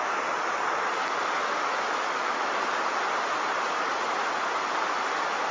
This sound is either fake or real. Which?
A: real